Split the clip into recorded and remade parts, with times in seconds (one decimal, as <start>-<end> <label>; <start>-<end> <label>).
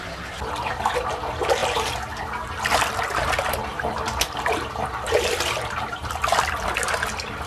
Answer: 0.0-3.7 recorded; 3.7-6.1 remade; 6.1-7.5 recorded